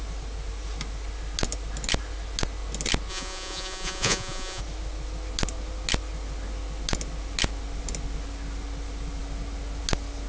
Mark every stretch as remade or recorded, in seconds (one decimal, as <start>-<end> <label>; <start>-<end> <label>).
0.0-3.1 recorded; 3.1-4.6 remade; 4.6-10.3 recorded